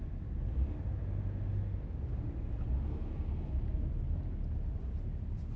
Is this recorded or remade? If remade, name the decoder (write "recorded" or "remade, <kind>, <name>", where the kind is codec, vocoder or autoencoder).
recorded